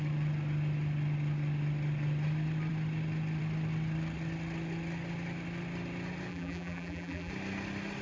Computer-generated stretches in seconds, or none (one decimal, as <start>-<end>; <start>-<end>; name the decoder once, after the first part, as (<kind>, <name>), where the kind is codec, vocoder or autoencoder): 6.3-7.3 (vocoder, BigVGAN v2)